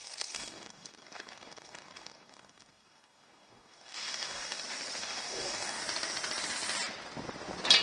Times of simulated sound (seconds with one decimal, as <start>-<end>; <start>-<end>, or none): 0.0-4.6; 5.0-5.8